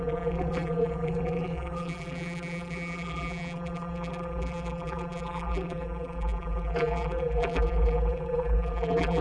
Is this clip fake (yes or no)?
yes